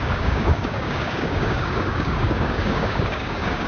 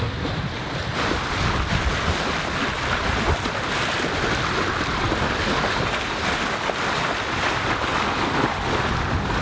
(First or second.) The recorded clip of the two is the second